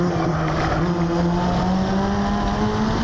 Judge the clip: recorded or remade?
recorded